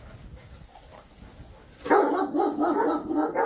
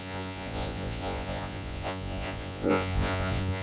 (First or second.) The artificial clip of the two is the second